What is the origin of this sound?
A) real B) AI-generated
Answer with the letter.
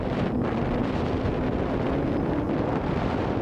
B